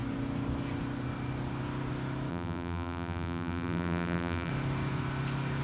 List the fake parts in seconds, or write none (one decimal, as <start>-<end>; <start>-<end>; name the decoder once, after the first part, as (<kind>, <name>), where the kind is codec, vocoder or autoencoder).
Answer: 2.3-4.5 (vocoder, BigVGAN v2)

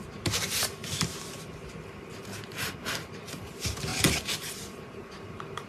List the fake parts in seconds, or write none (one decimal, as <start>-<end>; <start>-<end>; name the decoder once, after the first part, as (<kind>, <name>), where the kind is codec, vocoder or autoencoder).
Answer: 0.0-3.9 (vocoder, BigVGAN v2); 5.0-5.7